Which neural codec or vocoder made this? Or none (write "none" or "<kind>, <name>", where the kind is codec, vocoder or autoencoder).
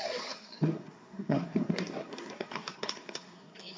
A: codec, SNAC